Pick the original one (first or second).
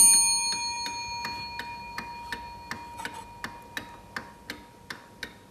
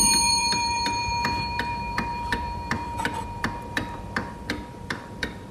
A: first